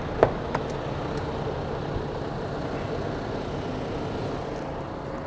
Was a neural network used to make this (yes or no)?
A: no